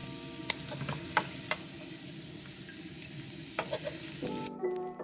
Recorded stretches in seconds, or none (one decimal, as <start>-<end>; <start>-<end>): 0.0-5.0